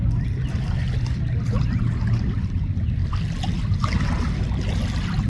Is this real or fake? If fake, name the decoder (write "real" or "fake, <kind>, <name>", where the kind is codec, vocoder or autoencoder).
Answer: real